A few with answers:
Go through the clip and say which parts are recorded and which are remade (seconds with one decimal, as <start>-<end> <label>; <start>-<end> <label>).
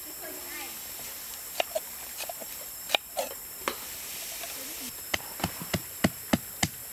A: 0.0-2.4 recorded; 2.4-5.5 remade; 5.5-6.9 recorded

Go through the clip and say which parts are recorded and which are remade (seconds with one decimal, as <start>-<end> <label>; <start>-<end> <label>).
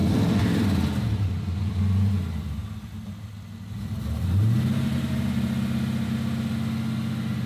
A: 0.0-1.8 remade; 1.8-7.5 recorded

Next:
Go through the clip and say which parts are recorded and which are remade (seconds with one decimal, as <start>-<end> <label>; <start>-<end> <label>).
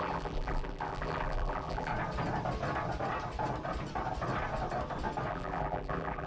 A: 0.0-1.9 remade; 1.9-5.3 recorded; 5.3-6.3 remade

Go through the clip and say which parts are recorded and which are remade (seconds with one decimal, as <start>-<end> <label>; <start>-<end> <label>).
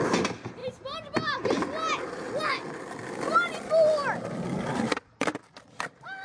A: 0.0-0.6 remade; 0.6-2.4 recorded; 2.4-6.2 remade